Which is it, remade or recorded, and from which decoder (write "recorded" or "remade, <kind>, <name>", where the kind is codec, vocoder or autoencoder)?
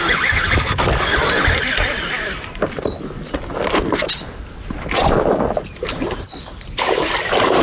recorded